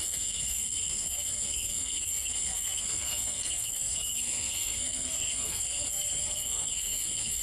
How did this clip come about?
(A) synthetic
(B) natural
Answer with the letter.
A